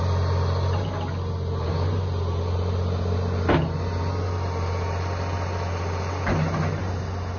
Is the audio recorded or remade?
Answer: recorded